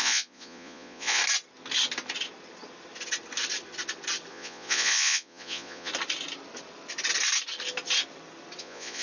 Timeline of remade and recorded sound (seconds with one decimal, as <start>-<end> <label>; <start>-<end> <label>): 0.0-1.2 remade; 1.2-4.3 recorded; 4.3-5.9 remade; 5.9-8.6 recorded; 8.6-9.0 remade